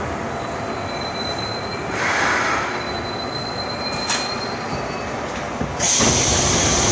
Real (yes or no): yes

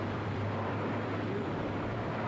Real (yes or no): no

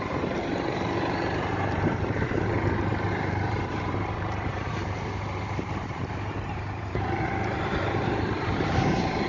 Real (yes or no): no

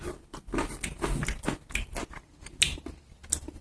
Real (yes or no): yes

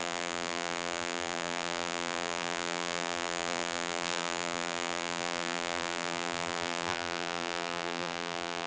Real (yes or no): no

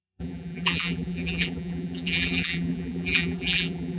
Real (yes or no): no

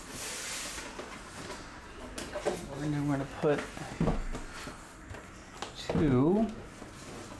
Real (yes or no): yes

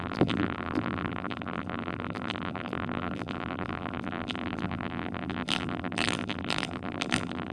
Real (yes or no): no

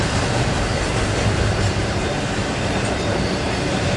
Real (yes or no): no